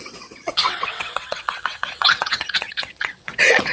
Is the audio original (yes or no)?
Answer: no